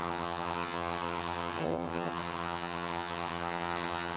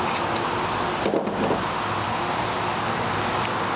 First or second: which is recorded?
second